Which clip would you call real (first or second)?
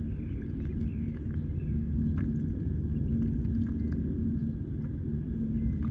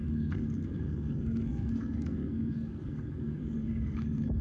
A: first